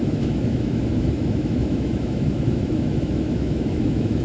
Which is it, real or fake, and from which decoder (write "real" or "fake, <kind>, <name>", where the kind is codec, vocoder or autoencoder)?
fake, autoencoder, DAC-VAE